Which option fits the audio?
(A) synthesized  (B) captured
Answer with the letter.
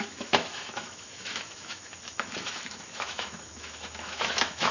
A